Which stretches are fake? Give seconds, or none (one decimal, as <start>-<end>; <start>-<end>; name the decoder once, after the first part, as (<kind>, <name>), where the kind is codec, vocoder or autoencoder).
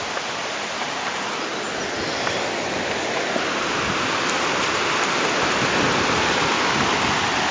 none